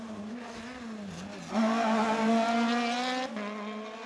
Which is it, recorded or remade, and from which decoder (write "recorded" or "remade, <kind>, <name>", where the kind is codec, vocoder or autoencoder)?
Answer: recorded